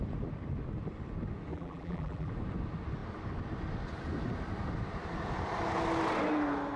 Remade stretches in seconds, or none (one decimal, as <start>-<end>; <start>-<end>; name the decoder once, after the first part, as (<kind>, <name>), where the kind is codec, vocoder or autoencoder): 1.5-2.3 (vocoder, BigVGAN v2)

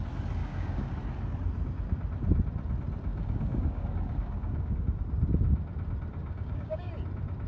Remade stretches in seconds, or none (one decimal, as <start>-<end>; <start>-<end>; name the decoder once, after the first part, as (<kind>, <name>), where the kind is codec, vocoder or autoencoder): 0.4-0.9 (codec, DAC); 3.1-4.7; 6.2-6.9